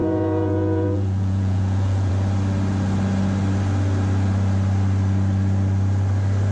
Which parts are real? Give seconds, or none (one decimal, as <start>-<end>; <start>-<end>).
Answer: 2.1-6.5